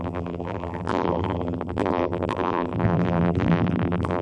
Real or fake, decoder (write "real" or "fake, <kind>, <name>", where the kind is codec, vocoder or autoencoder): fake, vocoder, BigVGAN v2